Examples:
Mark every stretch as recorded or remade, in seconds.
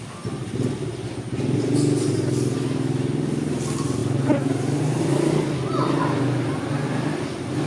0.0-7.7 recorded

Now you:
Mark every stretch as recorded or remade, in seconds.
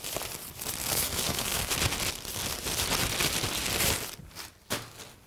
0.0-0.8 recorded; 0.8-1.7 remade; 1.7-5.3 recorded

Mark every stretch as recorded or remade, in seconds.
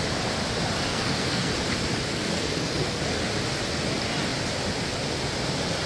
0.0-0.9 recorded; 0.9-1.5 remade; 1.5-2.1 recorded; 2.1-3.0 remade; 3.0-5.9 recorded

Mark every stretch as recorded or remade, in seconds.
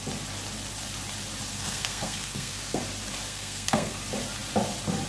0.0-1.5 recorded; 1.5-2.8 remade; 2.8-3.3 recorded; 3.3-4.0 remade; 4.0-5.1 recorded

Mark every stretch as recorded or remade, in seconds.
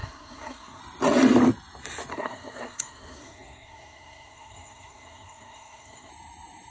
0.0-0.8 remade; 0.8-2.1 recorded; 2.1-6.1 remade; 6.1-6.7 recorded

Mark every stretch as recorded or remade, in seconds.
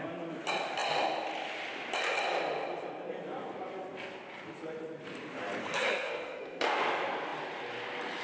0.0-5.6 recorded; 5.6-6.8 remade; 6.8-8.2 recorded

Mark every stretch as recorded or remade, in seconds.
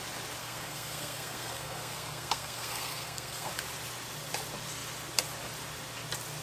0.0-0.4 recorded; 0.4-3.5 remade; 3.5-6.4 recorded